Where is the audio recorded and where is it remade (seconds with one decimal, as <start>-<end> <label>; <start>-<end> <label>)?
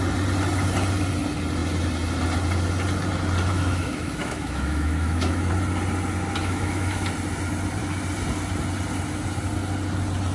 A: 0.0-3.5 recorded; 3.5-5.5 remade; 5.5-6.4 recorded; 6.4-7.1 remade; 7.1-10.3 recorded